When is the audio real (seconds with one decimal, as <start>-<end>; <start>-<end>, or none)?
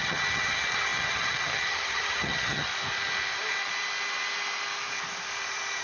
2.7-5.8